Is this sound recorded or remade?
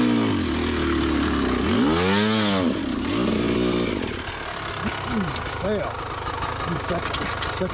recorded